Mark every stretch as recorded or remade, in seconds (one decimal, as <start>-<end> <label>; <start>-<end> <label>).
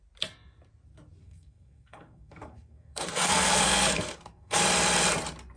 0.0-1.2 recorded; 1.2-4.6 remade; 4.6-5.6 recorded